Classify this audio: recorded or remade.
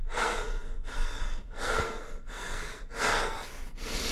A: remade